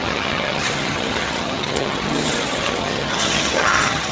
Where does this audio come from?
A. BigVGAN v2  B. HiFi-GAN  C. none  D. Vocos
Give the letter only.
B